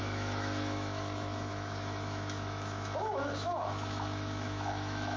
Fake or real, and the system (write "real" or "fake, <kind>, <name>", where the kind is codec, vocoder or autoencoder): fake, autoencoder, DAC-VAE